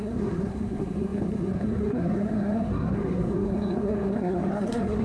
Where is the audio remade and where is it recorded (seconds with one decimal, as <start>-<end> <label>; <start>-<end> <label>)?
0.0-5.0 remade